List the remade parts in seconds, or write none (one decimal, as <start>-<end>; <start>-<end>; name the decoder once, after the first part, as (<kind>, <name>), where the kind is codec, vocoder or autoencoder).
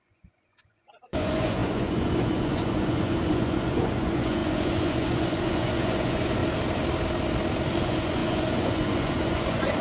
0.0-6.4 (vocoder, Vocos); 7.8-9.8